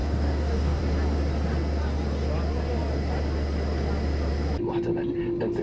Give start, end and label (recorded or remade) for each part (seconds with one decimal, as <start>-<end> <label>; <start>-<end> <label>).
0.0-0.8 remade; 0.8-5.6 recorded